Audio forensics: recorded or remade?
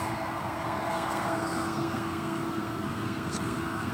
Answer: remade